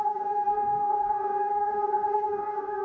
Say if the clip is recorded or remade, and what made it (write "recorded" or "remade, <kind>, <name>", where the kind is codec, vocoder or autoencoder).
remade, codec, DAC